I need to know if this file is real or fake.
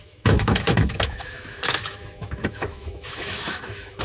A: fake